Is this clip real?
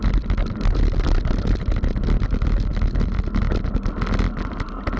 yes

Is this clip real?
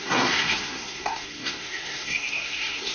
no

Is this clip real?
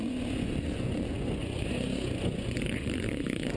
no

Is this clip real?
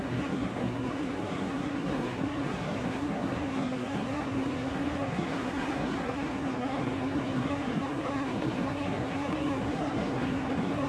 no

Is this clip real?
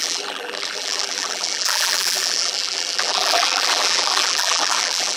no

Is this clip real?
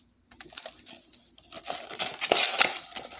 yes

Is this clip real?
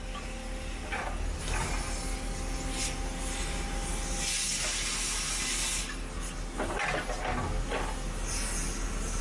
yes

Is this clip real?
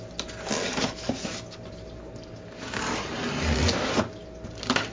yes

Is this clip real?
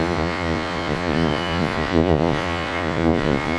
no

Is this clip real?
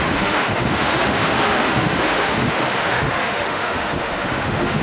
no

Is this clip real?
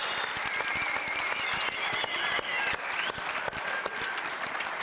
yes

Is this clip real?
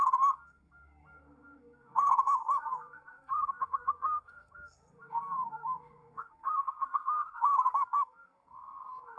no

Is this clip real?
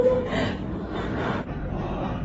no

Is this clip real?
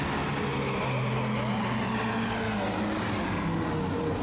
yes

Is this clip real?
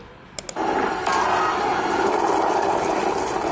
yes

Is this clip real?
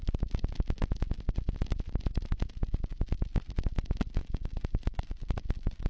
yes